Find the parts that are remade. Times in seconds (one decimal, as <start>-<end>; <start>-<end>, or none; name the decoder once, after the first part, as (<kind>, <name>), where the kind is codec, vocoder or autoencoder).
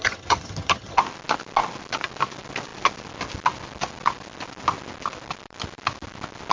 0.0-1.0 (vocoder, HiFi-GAN)